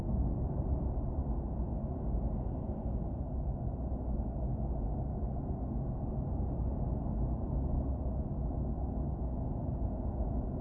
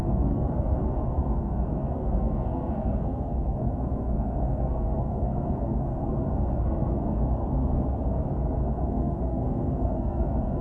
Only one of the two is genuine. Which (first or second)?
first